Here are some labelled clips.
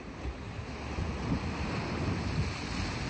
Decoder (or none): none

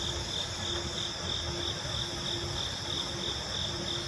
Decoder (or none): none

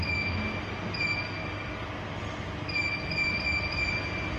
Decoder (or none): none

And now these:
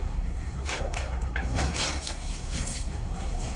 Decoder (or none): codec, SNAC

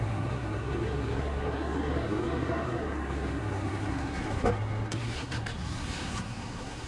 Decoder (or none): codec, SNAC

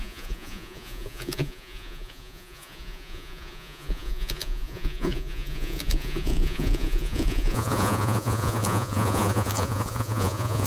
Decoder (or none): vocoder, Vocos